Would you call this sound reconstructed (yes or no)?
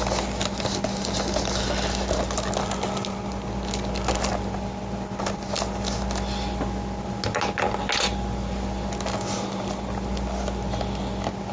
no